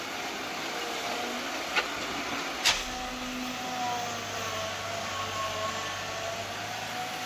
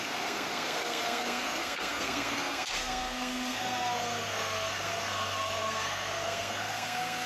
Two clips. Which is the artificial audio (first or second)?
second